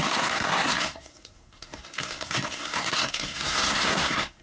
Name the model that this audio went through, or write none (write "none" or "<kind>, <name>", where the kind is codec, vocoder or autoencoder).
codec, SNAC